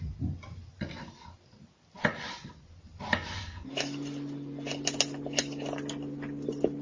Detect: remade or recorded recorded